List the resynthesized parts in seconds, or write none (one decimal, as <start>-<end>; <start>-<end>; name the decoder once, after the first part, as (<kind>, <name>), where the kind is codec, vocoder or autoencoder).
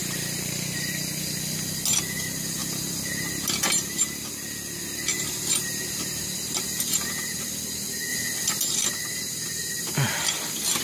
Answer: 0.0-0.9 (vocoder, BigVGAN v2); 5.1-6.8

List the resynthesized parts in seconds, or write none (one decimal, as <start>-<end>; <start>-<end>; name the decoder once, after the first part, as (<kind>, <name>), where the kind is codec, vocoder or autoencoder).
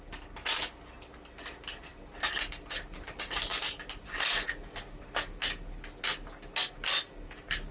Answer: none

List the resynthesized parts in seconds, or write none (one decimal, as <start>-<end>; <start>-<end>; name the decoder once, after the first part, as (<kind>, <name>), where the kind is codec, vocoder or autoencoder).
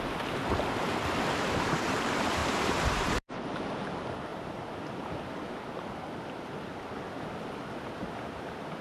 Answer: 2.4-3.3 (vocoder, BigVGAN v2)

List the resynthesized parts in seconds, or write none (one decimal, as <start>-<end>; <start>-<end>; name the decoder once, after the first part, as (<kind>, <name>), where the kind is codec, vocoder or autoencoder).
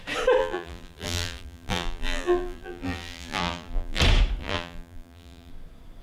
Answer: 0.4-4.0 (vocoder, BigVGAN v2); 4.4-5.5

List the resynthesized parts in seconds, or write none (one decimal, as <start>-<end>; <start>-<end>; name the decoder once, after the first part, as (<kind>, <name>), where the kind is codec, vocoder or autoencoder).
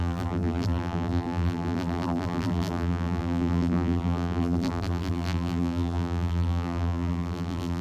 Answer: 0.0-7.8 (vocoder, BigVGAN v2)